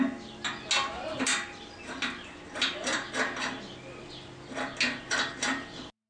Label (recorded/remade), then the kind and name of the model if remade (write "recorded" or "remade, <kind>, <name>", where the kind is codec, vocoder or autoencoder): recorded